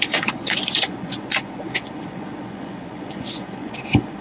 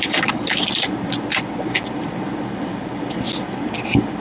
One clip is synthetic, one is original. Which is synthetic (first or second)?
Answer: first